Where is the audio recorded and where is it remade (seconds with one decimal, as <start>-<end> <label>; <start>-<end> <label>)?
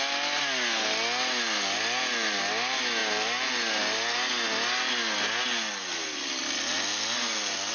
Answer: 0.0-7.7 recorded